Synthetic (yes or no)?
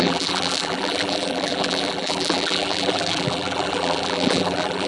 yes